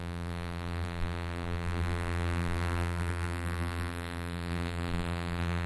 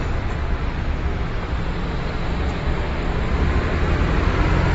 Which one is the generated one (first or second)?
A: first